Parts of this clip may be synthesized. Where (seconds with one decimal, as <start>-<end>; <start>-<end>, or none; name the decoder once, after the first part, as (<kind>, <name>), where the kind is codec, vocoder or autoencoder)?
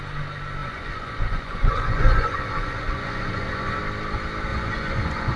0.6-3.8 (vocoder, Vocos); 4.5-5.4